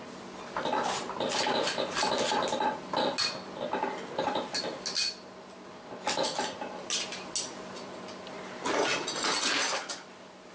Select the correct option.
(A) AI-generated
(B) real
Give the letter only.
B